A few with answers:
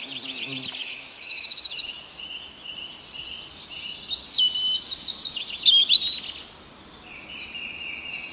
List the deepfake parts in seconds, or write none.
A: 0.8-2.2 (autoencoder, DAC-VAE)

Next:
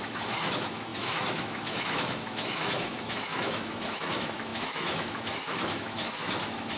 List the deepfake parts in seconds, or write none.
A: 0.0-6.8 (autoencoder, DAC-VAE)